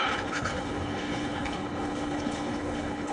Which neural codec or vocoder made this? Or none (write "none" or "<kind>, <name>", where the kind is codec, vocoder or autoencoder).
codec, HILCodec